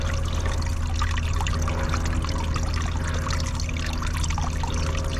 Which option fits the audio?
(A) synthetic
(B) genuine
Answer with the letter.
B